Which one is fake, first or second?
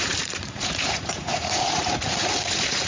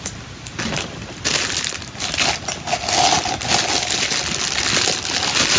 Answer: first